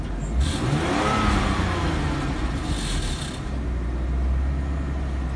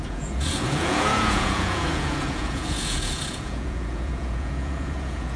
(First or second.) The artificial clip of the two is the second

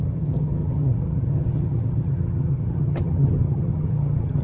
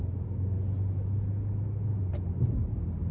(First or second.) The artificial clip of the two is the first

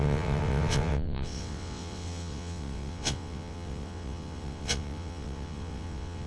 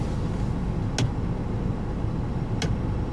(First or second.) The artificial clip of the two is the first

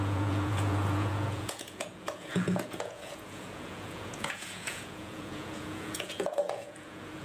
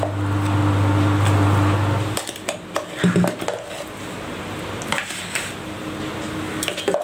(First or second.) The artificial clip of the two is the first